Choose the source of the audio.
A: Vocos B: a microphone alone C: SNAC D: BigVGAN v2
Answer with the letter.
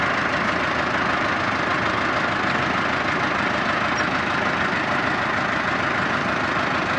B